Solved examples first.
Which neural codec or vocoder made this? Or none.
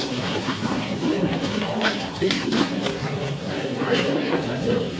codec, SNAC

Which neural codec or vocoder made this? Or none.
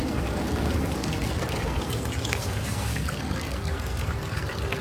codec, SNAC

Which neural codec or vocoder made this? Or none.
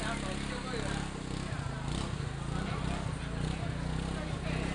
none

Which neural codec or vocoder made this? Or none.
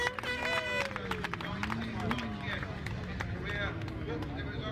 none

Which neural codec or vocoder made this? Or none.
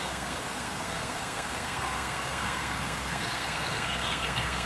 codec, SNAC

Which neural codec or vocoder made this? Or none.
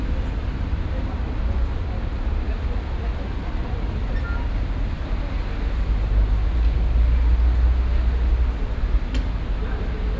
none